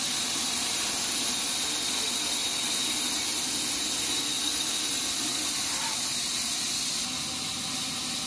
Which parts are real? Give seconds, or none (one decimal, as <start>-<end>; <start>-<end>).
0.0-8.3